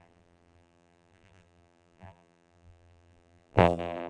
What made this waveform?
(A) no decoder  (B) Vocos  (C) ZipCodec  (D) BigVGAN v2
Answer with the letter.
D